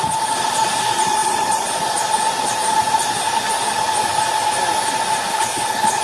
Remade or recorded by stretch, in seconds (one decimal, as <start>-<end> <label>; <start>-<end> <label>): 0.0-5.3 recorded; 5.3-6.0 remade